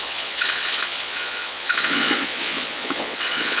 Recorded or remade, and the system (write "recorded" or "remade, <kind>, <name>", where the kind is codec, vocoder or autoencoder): remade, vocoder, Vocos